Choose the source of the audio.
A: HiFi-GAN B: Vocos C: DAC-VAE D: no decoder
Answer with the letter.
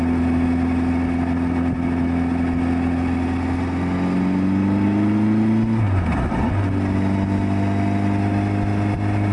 D